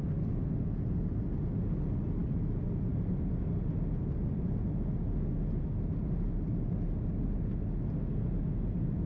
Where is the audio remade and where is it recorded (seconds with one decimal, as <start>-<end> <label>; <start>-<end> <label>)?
0.0-9.1 recorded